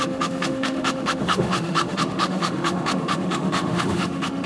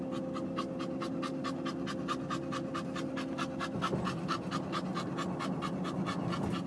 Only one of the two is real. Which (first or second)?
second